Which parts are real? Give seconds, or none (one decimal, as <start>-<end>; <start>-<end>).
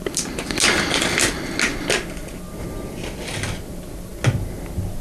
0.0-5.0